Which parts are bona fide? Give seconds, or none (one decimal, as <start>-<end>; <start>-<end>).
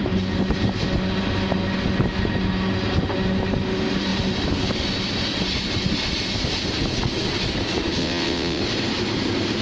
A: 0.0-8.0; 8.6-9.6